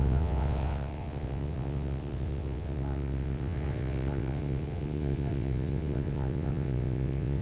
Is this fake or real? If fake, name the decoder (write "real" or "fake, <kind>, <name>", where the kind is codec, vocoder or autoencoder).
fake, vocoder, WaveNeXt